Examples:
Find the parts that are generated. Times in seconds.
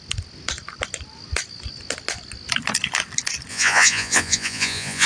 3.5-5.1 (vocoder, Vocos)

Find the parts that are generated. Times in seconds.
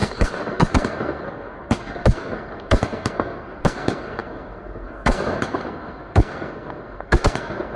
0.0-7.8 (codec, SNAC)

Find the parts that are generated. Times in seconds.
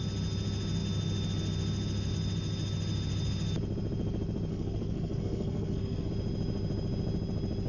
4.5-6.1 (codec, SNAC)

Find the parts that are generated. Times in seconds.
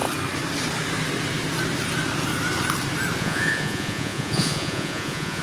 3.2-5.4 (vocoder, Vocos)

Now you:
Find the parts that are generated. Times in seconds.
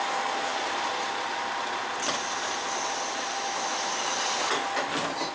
none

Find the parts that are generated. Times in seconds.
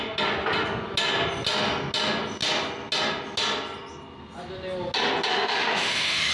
5.3-6.3 (autoencoder, DAC-VAE)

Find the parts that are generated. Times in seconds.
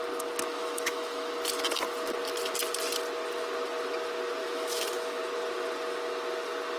0.5-1.3 (autoencoder, DAC-VAE); 4.4-5.2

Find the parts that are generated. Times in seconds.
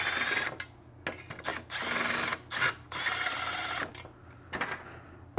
none